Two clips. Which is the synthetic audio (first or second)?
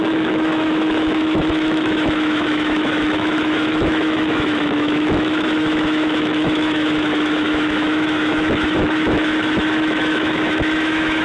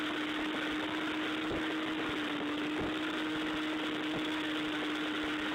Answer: first